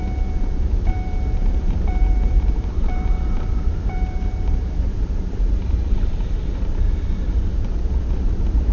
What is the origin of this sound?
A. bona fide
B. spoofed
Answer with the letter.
B